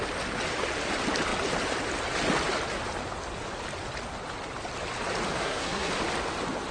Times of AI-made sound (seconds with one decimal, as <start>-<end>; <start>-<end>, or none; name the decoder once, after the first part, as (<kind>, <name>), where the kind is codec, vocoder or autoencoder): 5.4-5.9 (codec, SNAC)